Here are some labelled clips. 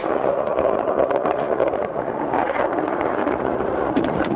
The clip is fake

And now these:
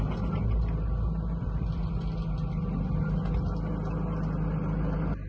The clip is real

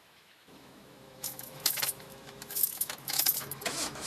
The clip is fake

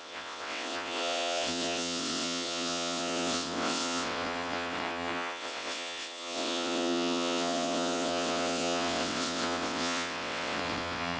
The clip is fake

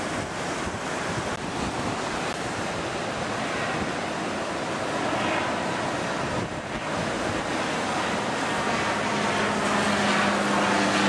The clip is real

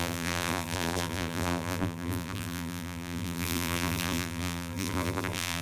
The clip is fake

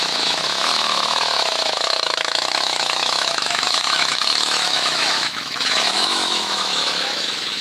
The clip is fake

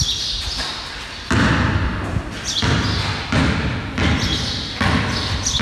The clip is real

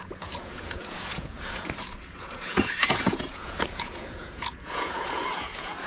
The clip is fake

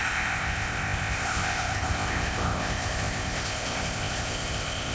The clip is fake